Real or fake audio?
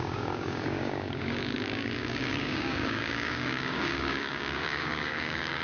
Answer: fake